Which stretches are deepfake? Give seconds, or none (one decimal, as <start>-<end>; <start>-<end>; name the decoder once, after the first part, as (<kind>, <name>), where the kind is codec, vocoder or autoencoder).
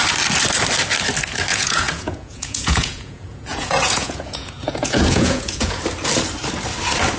1.5-5.8 (vocoder, Vocos)